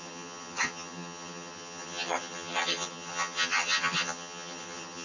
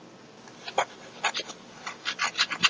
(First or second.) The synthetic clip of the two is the first